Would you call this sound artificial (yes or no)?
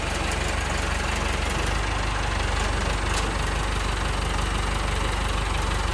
no